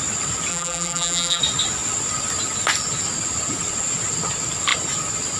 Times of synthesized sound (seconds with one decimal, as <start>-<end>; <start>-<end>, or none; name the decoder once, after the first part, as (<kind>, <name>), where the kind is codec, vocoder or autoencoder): 0.5-1.4 (vocoder, BigVGAN v2)